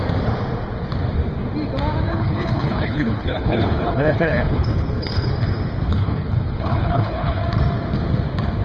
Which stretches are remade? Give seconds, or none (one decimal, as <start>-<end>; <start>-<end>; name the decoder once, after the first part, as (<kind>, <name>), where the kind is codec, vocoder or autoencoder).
2.1-5.3 (codec, HILCodec); 5.9-7.4

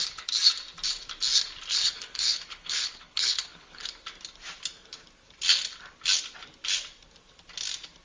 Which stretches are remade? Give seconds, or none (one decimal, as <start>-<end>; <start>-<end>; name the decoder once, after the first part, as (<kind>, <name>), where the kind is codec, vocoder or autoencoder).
1.7-3.9 (codec, HILCodec)

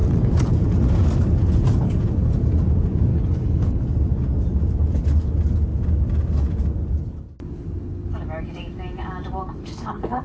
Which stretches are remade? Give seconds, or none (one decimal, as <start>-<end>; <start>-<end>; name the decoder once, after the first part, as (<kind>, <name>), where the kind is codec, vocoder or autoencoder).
3.1-3.8 (codec, HILCodec); 9.6-10.2

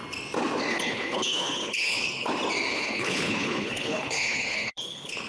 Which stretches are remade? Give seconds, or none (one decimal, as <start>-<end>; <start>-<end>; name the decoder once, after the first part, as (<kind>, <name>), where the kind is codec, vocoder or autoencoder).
0.7-2.3 (codec, HILCodec); 2.7-5.3